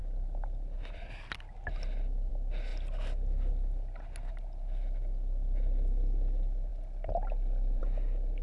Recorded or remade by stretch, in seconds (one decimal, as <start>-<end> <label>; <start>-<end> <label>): 0.0-8.4 recorded